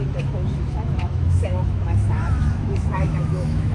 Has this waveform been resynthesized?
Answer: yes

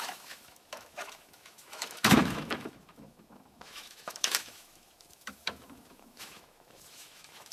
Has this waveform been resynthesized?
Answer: yes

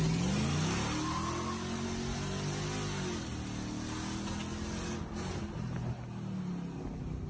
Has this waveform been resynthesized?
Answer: no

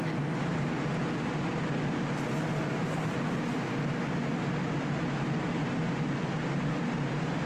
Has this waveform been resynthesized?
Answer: no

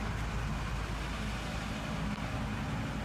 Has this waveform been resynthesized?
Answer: no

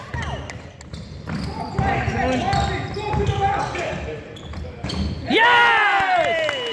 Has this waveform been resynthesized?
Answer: no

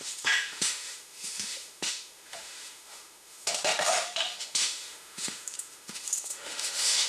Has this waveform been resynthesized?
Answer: yes